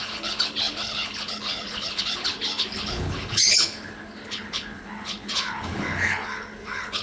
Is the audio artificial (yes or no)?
yes